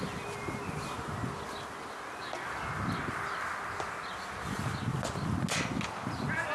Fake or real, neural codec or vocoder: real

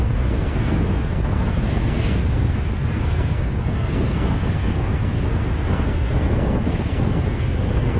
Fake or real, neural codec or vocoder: fake, codec, SNAC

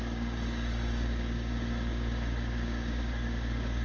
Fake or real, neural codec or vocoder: fake, codec, DAC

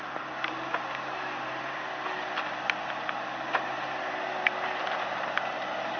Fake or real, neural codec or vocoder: real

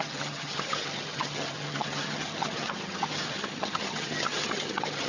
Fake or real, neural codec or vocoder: fake, vocoder, HiFi-GAN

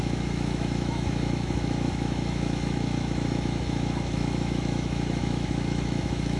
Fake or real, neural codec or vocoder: fake, autoencoder, DAC-VAE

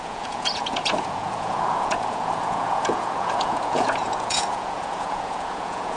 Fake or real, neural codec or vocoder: fake, vocoder, Vocos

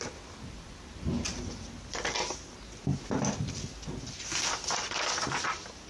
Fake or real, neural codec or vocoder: real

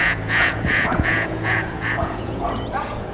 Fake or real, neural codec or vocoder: fake, vocoder, Vocos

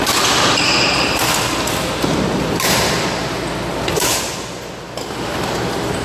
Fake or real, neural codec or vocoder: real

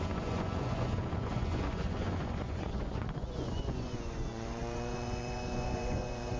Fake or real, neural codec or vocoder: fake, vocoder, Vocos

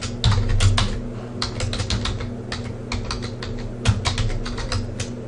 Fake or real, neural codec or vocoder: real